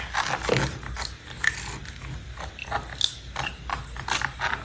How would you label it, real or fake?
real